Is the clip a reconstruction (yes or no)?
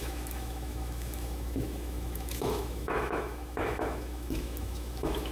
yes